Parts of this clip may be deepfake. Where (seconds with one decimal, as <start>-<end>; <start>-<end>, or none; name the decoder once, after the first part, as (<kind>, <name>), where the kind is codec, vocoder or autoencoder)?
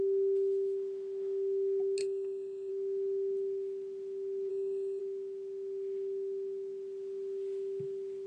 2.0-2.7 (codec, SNAC); 4.5-5.0